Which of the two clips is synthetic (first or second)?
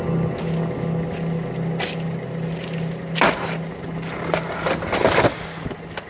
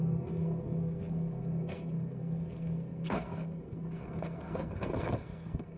second